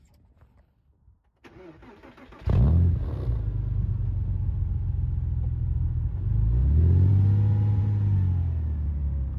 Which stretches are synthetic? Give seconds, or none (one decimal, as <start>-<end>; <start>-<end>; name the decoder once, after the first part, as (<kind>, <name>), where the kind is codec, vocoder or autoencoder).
none